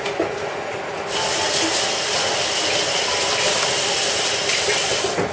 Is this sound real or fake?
real